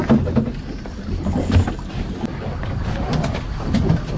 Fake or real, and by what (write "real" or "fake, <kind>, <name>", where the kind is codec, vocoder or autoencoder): real